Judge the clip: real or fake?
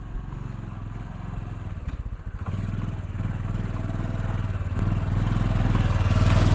real